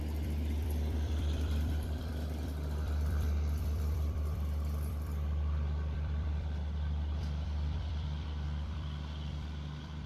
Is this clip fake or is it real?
fake